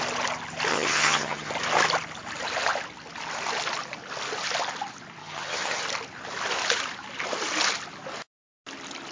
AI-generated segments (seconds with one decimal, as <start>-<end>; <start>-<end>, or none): 0.7-1.5; 5.2-5.8

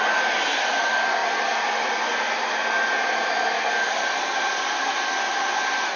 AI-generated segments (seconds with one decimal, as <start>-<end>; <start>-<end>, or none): none

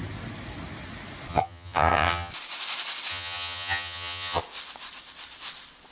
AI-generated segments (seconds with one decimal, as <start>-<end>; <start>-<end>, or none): 1.3-2.3; 3.1-4.4

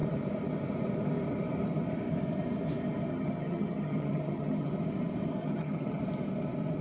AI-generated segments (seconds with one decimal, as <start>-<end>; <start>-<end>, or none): 3.1-4.7; 5.4-6.0

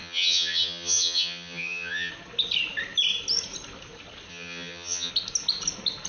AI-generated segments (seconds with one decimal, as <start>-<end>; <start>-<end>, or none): 0.0-2.1; 4.3-5.1

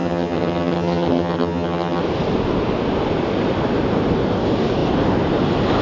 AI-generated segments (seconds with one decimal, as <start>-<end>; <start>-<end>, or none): 0.0-2.0